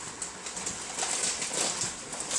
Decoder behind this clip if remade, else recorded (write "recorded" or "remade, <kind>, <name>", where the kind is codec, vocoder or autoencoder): recorded